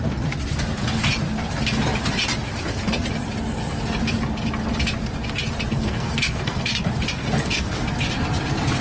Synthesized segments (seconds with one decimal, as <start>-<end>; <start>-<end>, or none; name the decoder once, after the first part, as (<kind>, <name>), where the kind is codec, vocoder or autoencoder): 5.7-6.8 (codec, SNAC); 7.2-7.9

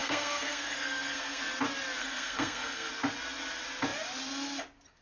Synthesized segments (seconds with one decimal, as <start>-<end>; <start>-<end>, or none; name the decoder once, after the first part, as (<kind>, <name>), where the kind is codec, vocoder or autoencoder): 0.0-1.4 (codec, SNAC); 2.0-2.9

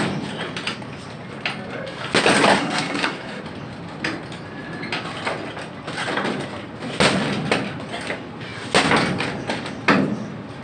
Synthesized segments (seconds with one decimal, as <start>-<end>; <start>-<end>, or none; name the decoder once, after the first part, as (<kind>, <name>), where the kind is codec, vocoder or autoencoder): 2.6-3.4 (codec, SNAC)